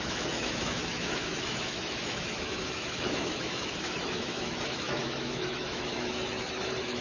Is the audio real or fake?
fake